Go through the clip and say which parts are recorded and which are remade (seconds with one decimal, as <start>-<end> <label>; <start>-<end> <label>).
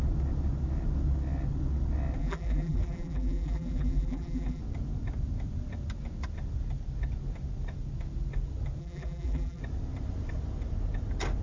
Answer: 0.0-2.2 recorded; 2.2-4.6 remade; 4.6-8.8 recorded; 8.8-9.6 remade; 9.6-11.4 recorded